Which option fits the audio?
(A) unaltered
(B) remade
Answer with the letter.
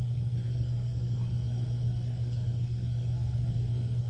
B